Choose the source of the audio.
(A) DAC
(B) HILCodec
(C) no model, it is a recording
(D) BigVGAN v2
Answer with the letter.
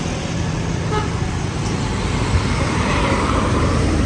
D